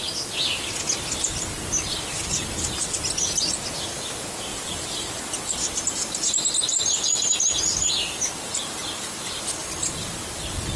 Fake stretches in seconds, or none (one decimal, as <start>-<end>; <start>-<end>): 4.5-5.2